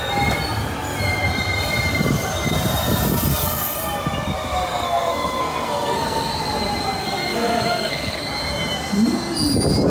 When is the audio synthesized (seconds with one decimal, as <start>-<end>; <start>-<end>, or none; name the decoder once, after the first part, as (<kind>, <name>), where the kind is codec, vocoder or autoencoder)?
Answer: 3.3-3.8 (codec, SNAC); 4.7-6.3; 7.0-8.2